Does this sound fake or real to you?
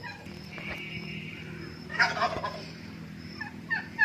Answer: fake